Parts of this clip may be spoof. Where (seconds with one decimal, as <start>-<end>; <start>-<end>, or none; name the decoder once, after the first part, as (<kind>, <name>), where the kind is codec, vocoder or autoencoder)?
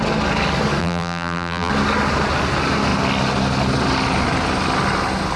0.8-1.7 (vocoder, BigVGAN v2)